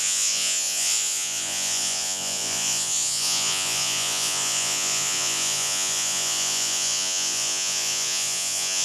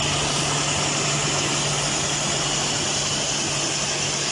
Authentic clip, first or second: second